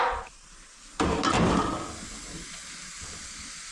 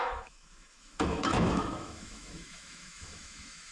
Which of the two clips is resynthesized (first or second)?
second